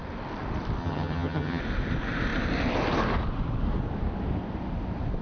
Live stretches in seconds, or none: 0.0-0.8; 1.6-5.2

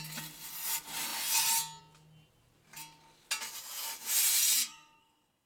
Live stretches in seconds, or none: 0.0-4.6